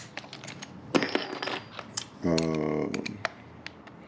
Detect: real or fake real